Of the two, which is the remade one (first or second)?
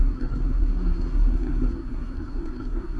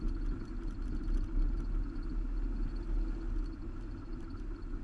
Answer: first